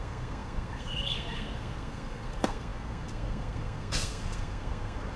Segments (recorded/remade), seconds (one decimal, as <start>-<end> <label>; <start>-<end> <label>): 0.0-5.2 remade